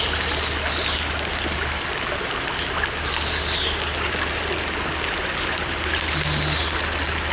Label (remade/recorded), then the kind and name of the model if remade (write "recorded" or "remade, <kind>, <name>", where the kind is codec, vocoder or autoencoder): recorded